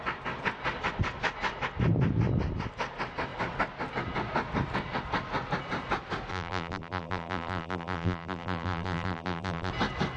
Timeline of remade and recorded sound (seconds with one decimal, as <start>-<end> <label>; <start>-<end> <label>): 0.0-6.3 recorded; 6.3-9.7 remade; 9.7-10.2 recorded